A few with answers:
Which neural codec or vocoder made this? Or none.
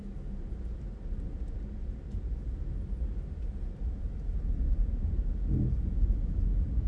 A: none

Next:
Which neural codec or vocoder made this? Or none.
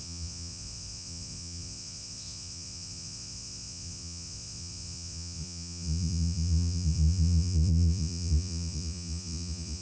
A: vocoder, Vocos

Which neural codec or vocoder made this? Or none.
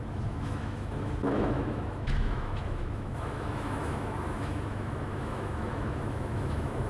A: autoencoder, DAC-VAE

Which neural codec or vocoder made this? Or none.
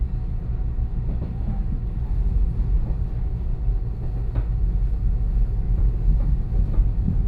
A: none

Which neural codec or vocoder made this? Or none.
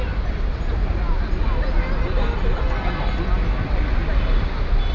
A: none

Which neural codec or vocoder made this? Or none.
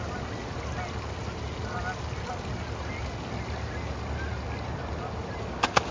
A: none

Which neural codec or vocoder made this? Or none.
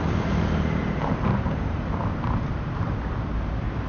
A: vocoder, BigVGAN v2